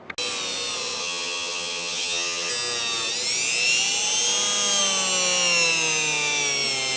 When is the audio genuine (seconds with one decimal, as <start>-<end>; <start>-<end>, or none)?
0.0-1.0; 2.5-7.0

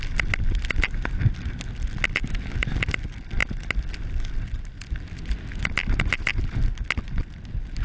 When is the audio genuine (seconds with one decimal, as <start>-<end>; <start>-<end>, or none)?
0.0-7.8